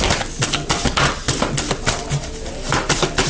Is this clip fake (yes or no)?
no